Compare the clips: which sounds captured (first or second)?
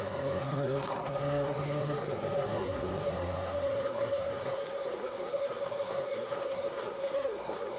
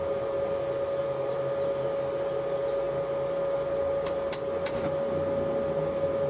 second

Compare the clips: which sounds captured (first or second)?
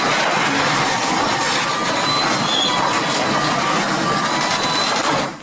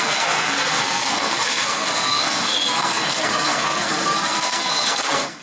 first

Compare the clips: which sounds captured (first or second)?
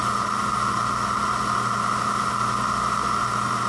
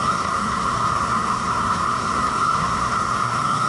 first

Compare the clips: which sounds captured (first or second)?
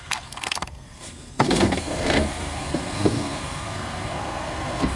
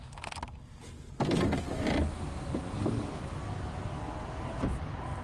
second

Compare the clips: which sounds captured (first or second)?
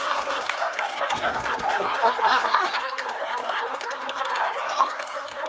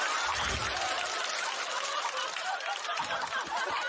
second